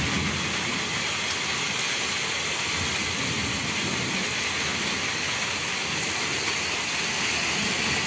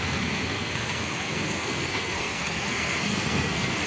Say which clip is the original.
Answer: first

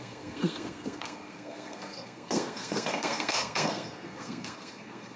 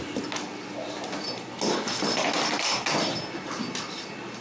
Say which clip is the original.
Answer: second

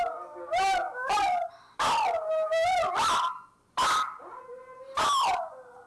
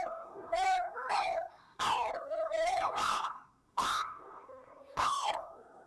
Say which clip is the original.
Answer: first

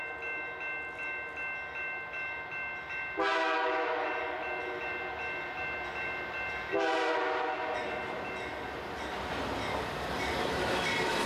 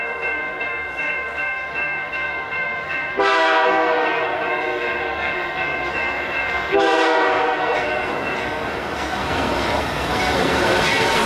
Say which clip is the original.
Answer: first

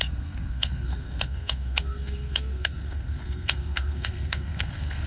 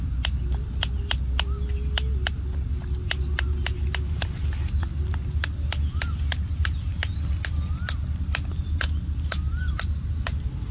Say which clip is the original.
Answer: second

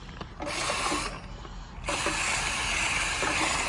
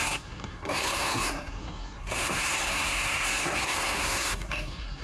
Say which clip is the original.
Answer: first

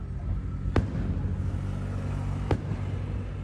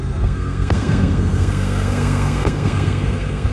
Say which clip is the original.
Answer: first